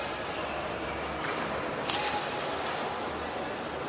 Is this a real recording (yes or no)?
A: yes